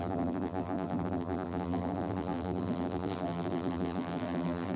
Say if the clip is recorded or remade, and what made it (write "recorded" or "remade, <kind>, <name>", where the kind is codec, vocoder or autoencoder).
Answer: remade, vocoder, BigVGAN v2